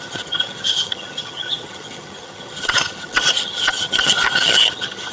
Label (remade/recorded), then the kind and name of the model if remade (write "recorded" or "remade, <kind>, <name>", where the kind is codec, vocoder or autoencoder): remade, vocoder, HiFi-GAN